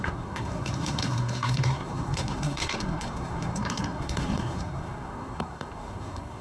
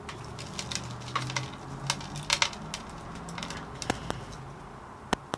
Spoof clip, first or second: first